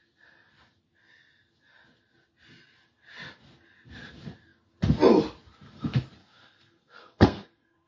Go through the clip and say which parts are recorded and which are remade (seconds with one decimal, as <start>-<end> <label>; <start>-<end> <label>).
0.0-6.2 recorded; 6.2-7.9 remade